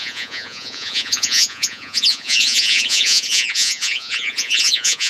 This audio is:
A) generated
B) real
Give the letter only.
A